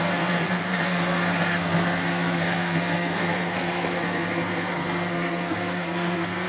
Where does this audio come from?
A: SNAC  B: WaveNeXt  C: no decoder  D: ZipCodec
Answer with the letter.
A